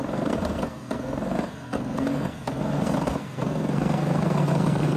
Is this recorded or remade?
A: remade